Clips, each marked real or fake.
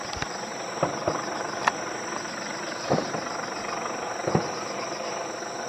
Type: real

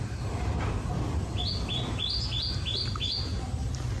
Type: real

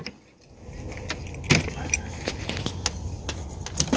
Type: real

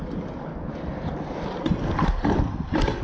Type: real